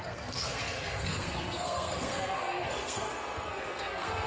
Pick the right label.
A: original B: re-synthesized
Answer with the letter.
B